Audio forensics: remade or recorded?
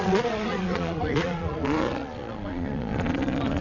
remade